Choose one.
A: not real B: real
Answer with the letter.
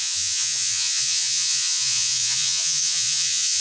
A